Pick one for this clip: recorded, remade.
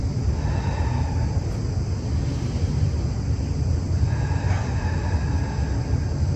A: recorded